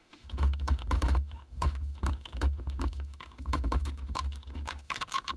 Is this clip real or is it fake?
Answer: fake